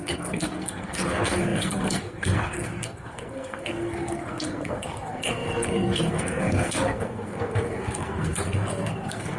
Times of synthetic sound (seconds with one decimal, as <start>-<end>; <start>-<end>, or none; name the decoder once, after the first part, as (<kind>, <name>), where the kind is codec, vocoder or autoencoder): 0.0-9.4 (codec, SNAC)